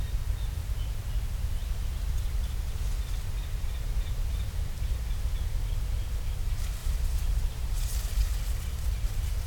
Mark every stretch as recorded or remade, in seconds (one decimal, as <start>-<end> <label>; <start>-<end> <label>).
0.0-6.8 recorded; 6.8-9.5 remade